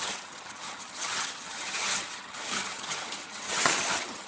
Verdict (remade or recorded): remade